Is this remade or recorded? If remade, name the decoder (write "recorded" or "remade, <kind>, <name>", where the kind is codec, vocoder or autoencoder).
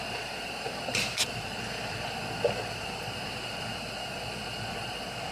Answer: remade, vocoder, BigVGAN v2